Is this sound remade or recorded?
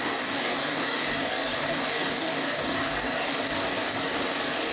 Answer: remade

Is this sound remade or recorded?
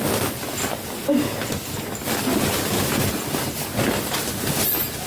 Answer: recorded